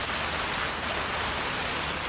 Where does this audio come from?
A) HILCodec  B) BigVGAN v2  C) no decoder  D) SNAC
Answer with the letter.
C